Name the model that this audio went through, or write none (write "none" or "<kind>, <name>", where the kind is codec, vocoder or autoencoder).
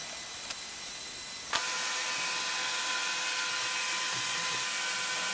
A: none